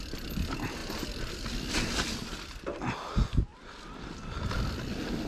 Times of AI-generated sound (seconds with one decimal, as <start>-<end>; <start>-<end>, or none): none